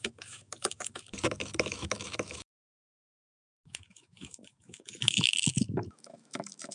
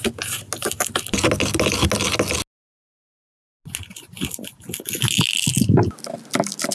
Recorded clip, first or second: second